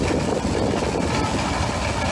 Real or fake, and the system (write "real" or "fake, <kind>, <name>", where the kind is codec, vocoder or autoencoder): real